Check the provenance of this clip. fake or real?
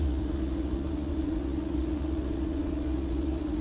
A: fake